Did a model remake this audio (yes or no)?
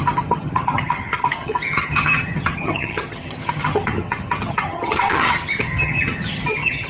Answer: yes